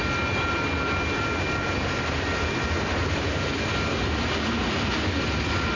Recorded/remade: recorded